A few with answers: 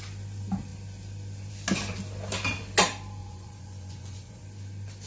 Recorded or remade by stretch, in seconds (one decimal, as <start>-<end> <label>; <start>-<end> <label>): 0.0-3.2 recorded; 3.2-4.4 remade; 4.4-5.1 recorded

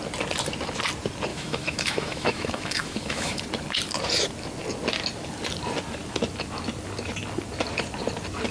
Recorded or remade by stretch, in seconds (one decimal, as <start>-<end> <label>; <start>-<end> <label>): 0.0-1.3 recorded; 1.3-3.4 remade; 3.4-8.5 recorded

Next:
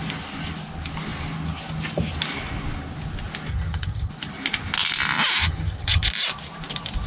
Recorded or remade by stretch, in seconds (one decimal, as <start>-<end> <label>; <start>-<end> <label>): 0.0-3.5 recorded; 3.5-4.1 remade; 4.1-5.4 recorded; 5.4-6.1 remade; 6.1-7.1 recorded

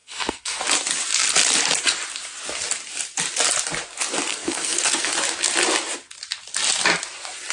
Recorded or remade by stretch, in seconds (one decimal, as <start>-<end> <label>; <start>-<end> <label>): 0.0-0.6 remade; 0.6-4.3 recorded; 4.3-5.1 remade; 5.1-7.5 recorded